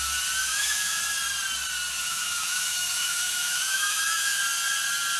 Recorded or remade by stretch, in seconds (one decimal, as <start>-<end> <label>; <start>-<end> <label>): 0.0-0.4 recorded; 0.4-1.0 remade; 1.0-2.0 recorded; 2.0-4.4 remade; 4.4-5.2 recorded